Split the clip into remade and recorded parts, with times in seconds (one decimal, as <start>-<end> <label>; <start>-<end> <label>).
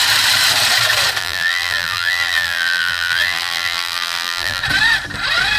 0.0-1.2 recorded; 1.2-4.6 remade; 4.6-5.6 recorded